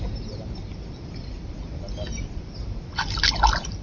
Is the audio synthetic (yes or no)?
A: no